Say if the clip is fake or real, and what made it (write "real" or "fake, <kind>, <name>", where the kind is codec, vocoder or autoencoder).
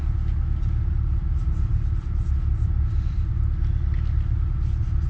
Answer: fake, vocoder, BigVGAN v2